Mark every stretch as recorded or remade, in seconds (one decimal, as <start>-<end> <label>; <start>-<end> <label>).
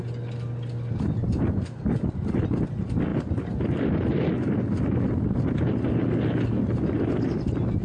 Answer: 0.0-7.8 recorded